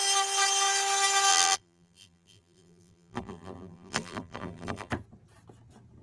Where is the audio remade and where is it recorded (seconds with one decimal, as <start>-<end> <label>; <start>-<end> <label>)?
0.0-1.3 recorded; 1.3-4.9 remade; 4.9-6.0 recorded